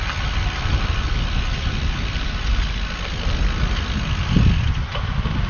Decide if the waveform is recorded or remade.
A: recorded